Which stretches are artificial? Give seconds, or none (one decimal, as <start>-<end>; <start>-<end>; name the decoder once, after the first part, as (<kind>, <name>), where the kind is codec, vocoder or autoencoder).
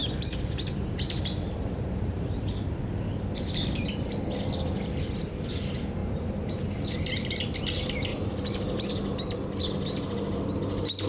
0.0-2.9 (vocoder, BigVGAN v2); 6.0-6.7; 8.1-8.9